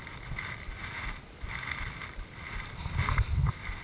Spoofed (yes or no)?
no